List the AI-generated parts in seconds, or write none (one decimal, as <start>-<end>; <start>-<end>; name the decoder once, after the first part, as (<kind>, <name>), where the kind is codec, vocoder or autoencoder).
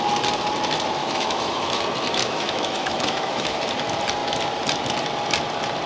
1.0-1.8 (autoencoder, DAC-VAE); 2.2-3.6